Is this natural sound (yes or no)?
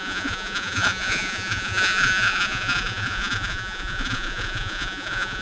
no